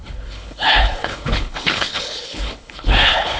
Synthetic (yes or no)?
yes